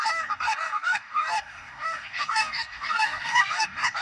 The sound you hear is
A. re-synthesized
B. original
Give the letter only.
A